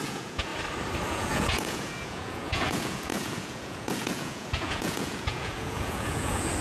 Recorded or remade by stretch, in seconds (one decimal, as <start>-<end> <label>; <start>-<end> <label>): 0.0-0.5 remade; 0.5-1.1 recorded; 1.1-6.6 remade